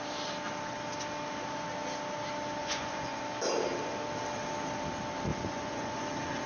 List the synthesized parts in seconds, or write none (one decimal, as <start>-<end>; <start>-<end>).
2.6-3.2; 5.3-6.0